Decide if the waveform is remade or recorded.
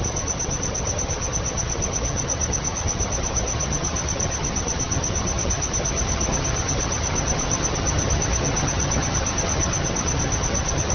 remade